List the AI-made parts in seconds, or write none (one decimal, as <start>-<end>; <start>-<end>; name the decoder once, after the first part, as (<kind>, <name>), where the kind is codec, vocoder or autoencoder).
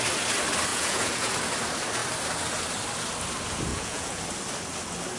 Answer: 0.7-1.3 (vocoder, Vocos); 3.7-4.2